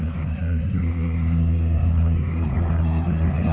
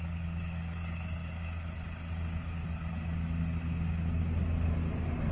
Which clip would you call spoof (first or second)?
first